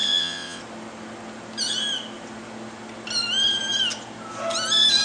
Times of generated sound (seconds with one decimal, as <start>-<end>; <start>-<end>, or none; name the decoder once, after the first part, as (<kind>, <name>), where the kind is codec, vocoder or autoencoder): 0.0-0.6 (vocoder, WaveNeXt)